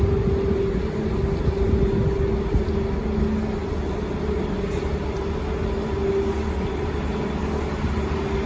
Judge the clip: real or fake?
real